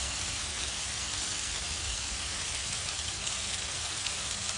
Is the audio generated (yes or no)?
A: yes